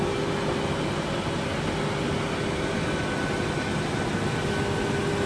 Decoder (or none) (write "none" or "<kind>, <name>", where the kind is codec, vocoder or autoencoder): none